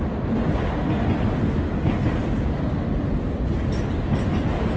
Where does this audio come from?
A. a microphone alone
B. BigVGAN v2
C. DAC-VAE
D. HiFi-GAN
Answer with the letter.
A